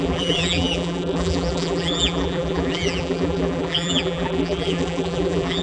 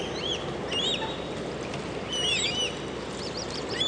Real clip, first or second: second